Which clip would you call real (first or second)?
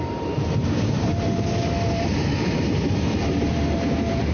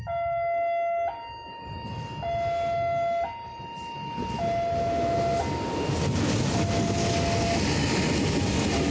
second